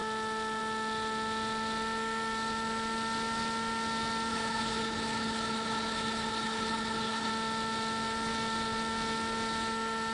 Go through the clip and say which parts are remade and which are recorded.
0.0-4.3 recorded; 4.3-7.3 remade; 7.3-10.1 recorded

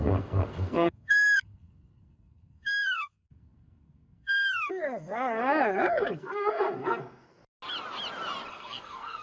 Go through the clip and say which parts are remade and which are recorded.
0.0-7.4 remade; 7.4-8.5 recorded; 8.5-9.2 remade

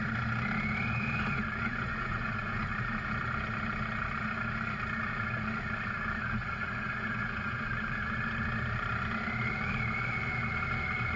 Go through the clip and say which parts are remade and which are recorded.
0.0-1.7 recorded; 1.7-2.7 remade; 2.7-6.4 recorded; 6.4-7.7 remade; 7.7-11.2 recorded